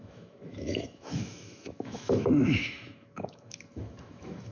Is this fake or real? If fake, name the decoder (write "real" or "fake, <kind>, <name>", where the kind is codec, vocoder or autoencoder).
fake, autoencoder, DAC-VAE